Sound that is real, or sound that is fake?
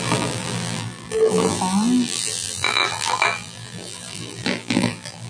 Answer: fake